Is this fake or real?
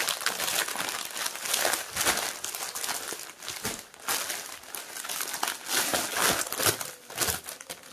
real